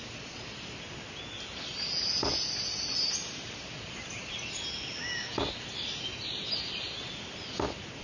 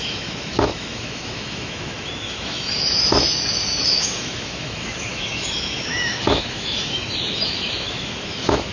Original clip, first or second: first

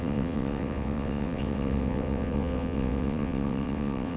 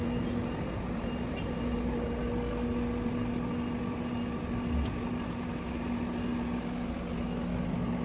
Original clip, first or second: second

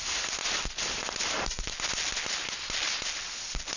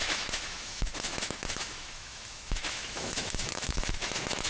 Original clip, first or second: first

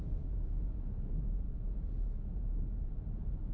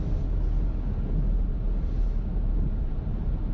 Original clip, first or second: second